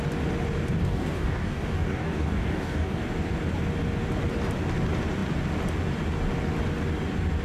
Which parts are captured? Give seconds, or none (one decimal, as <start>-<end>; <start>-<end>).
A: 0.0-0.8; 3.0-7.4